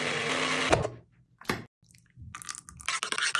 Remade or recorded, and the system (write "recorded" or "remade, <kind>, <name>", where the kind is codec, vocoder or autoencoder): recorded